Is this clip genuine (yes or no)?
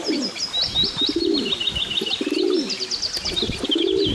yes